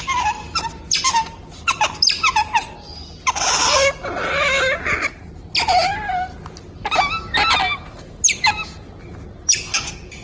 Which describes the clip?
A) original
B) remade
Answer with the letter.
A